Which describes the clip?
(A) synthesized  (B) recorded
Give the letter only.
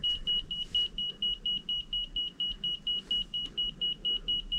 B